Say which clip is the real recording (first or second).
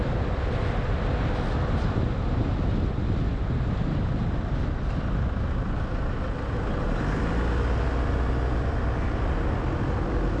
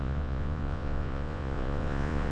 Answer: first